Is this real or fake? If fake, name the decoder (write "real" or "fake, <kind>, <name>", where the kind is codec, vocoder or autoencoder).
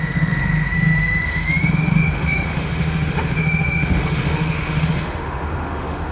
fake, autoencoder, DAC-VAE